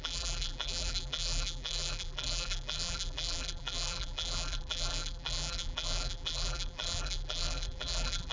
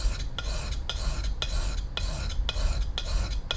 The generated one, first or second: first